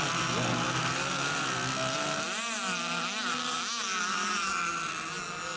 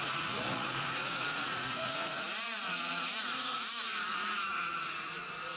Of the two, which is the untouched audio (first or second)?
first